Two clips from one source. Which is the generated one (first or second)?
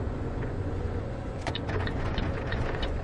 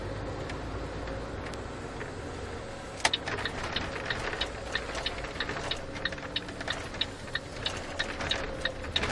first